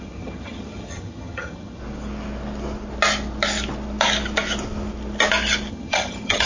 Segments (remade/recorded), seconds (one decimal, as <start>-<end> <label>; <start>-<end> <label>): 0.0-1.8 remade; 1.8-5.7 recorded; 5.7-6.5 remade